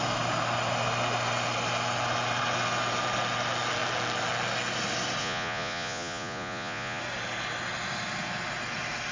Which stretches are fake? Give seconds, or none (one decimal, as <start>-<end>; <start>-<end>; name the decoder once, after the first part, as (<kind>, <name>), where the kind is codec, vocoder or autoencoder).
5.2-7.0 (vocoder, Vocos)